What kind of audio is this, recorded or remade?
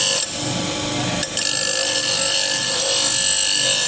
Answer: recorded